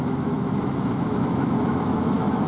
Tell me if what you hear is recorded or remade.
remade